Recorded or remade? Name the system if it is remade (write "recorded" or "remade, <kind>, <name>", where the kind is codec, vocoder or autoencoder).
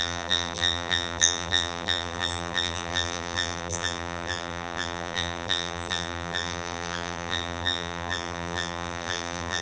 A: remade, vocoder, BigVGAN v2